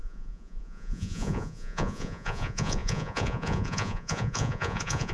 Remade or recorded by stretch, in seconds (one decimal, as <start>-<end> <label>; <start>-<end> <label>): 0.0-5.1 remade